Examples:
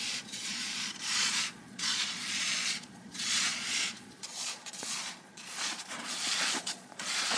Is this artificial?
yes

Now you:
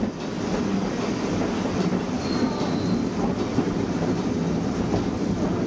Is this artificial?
no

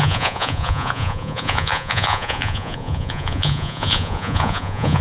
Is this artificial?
yes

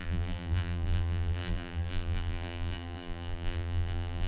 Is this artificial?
yes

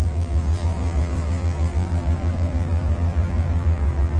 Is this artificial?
yes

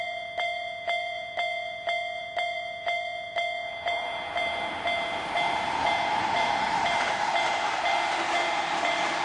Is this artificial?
yes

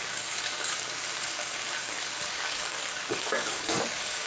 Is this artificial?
yes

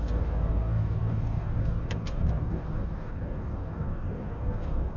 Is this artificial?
yes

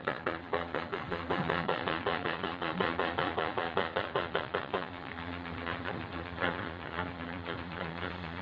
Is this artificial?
yes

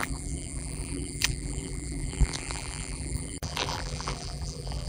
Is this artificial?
yes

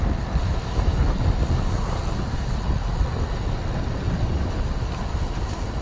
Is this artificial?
no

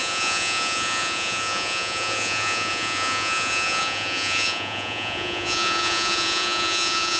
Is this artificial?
yes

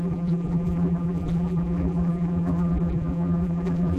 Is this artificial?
yes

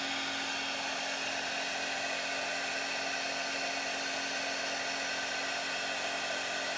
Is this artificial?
no